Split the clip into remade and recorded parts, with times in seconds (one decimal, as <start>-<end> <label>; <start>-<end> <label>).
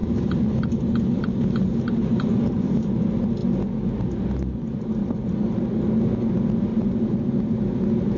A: 0.0-1.2 remade; 1.2-5.0 recorded; 5.0-5.6 remade; 5.6-6.7 recorded; 6.7-7.4 remade; 7.4-8.2 recorded